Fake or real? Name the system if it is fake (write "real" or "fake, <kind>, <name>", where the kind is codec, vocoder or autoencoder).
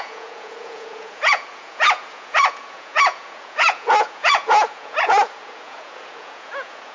fake, vocoder, Vocos